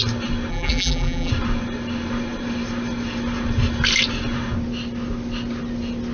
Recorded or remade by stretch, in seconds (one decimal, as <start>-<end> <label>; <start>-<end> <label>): 0.0-0.5 recorded; 0.5-1.3 remade; 1.3-6.1 recorded